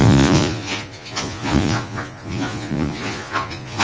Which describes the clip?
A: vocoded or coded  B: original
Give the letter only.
A